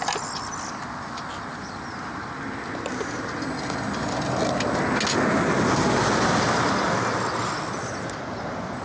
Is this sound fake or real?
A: real